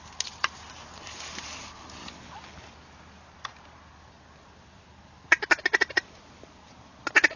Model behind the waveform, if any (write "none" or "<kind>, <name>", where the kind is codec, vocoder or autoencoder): none